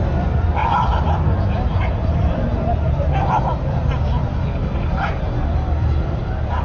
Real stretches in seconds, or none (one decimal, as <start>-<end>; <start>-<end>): none